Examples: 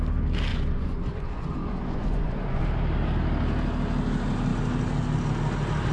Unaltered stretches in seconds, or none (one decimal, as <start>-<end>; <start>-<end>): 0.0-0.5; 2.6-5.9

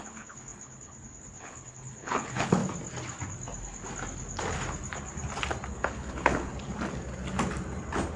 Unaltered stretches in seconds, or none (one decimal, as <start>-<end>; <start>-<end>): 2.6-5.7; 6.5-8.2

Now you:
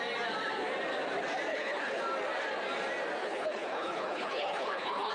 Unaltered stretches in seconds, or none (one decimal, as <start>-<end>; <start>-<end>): 0.0-1.5; 2.0-3.2

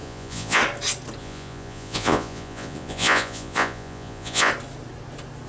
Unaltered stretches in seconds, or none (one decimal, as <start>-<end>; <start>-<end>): 0.6-1.2; 4.5-5.5